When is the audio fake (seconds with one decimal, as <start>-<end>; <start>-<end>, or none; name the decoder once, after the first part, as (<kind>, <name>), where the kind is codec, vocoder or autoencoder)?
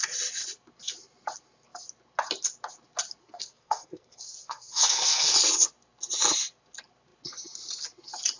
3.2-5.3 (codec, SNAC)